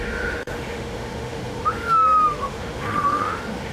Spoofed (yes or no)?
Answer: yes